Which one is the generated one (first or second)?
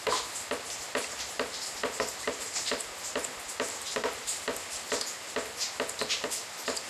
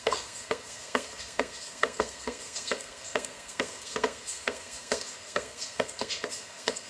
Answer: second